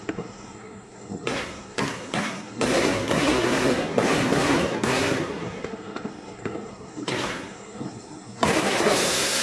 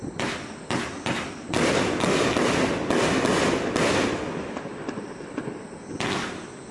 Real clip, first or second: second